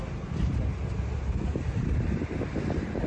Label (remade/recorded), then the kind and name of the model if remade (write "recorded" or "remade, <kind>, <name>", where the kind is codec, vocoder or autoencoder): remade, vocoder, BigVGAN v2